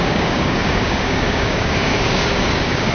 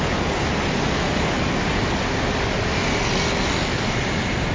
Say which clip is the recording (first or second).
second